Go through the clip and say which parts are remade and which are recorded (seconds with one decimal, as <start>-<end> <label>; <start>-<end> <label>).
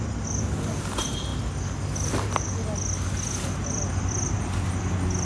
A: 0.0-5.2 recorded